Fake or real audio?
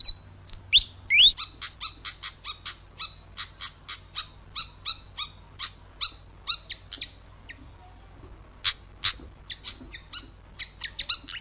real